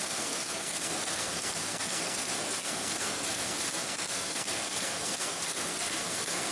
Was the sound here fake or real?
fake